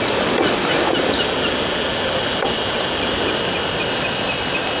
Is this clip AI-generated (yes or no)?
no